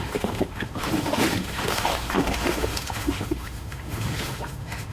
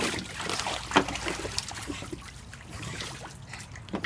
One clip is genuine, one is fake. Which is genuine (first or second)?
second